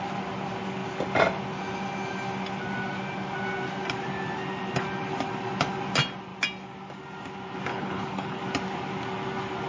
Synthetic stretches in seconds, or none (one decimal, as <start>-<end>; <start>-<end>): 7.7-8.4